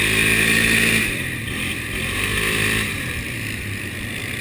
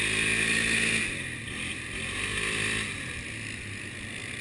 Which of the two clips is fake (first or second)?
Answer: first